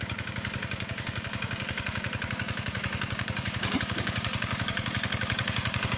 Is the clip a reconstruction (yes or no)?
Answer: yes